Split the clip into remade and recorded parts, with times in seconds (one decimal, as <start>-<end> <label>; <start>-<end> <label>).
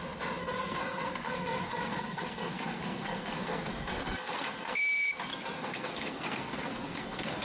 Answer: 0.0-0.4 recorded; 0.4-4.8 remade; 4.8-5.3 recorded; 5.3-7.4 remade